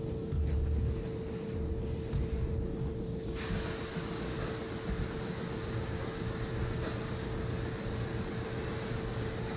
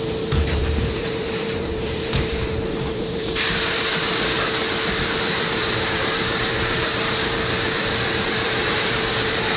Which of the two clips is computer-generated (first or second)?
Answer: second